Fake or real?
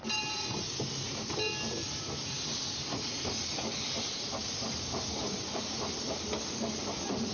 real